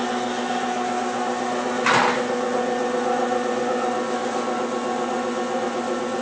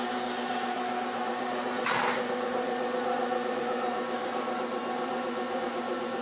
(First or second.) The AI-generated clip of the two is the second